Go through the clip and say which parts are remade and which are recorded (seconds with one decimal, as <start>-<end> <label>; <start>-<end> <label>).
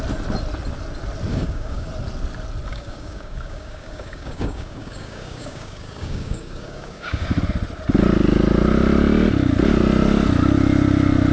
0.0-1.3 recorded; 1.3-1.9 remade; 1.9-2.7 recorded; 2.7-7.3 remade; 7.3-11.3 recorded